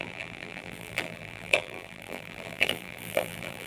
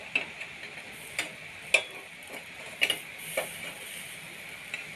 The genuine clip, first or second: second